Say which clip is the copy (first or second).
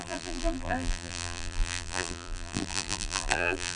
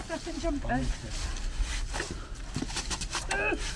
first